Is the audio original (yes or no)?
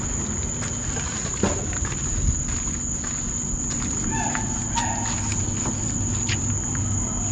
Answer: yes